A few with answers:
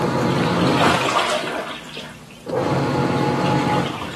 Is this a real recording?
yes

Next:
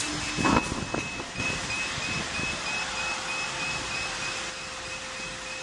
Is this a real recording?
yes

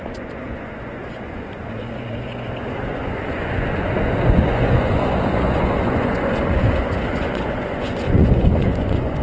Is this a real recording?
no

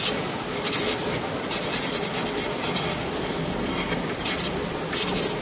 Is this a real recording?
yes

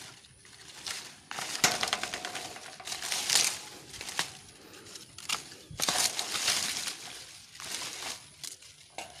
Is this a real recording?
yes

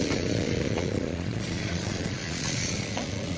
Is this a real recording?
no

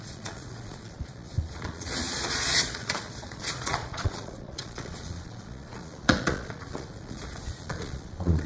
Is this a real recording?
no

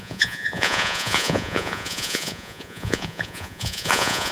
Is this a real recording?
no